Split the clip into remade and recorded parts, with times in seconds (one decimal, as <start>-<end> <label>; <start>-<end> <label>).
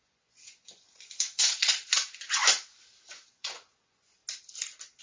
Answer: 0.0-2.4 remade; 2.4-3.3 recorded; 3.3-4.2 remade; 4.2-5.0 recorded